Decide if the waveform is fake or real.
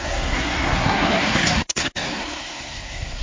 fake